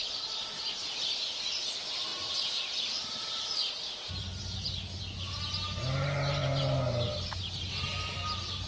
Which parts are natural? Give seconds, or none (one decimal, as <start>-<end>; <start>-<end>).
0.0-8.7